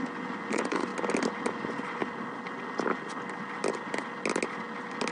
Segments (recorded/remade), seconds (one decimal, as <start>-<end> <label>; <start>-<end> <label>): 0.0-0.9 remade; 0.9-1.5 recorded; 1.5-2.0 remade; 2.0-5.1 recorded